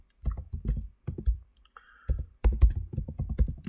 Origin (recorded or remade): remade